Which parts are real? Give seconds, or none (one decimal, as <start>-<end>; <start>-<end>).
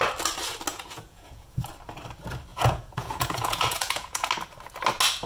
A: 0.0-0.7; 1.7-2.5; 4.3-5.3